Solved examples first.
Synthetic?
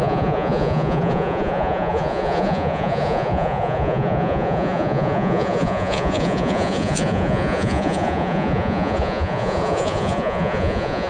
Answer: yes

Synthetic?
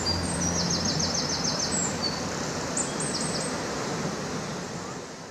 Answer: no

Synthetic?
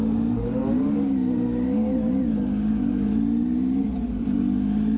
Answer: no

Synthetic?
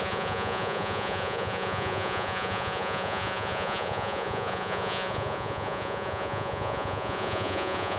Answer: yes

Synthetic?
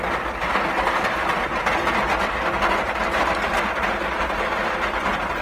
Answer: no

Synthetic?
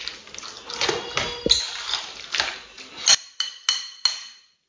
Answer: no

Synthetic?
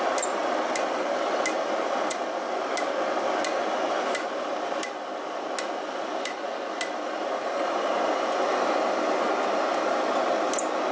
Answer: no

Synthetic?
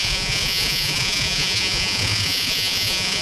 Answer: yes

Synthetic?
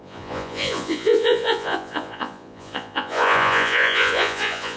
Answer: yes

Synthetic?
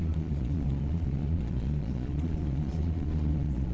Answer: yes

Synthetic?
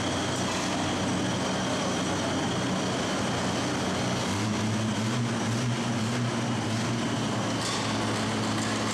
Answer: no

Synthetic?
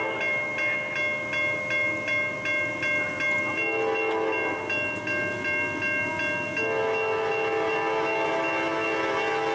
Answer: no